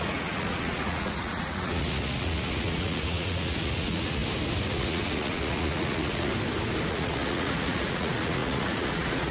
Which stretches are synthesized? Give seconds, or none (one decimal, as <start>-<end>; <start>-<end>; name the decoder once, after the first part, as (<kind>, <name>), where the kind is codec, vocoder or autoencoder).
0.0-4.2 (vocoder, Vocos); 4.7-6.3; 6.9-9.3